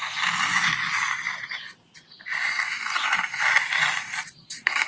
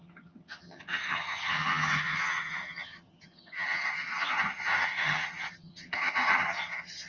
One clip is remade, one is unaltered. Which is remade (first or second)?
second